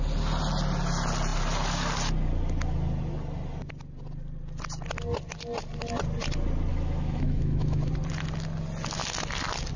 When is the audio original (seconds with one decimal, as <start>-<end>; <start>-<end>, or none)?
0.0-6.7; 7.9-9.8

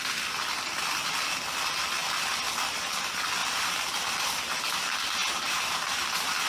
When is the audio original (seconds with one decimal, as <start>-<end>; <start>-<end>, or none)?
0.0-3.4; 4.2-5.2; 5.8-6.5

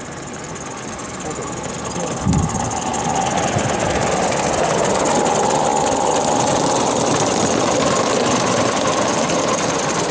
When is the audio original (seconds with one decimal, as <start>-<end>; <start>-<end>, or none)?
0.0-10.1

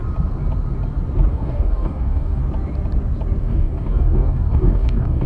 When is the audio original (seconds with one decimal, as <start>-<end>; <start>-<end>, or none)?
0.0-1.3; 2.4-3.4

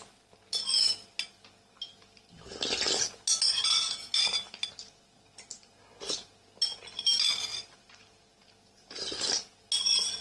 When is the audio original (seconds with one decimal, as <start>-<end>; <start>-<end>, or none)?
0.0-7.5; 9.5-10.2

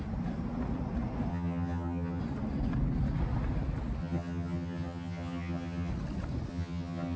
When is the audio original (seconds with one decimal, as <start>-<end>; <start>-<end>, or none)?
0.0-1.3; 2.2-4.0; 5.9-6.5

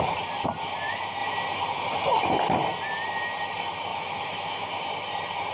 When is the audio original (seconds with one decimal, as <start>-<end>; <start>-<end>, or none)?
0.0-3.9; 4.7-5.5

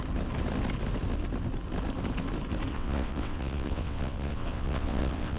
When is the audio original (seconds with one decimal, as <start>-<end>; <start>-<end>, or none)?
0.0-2.7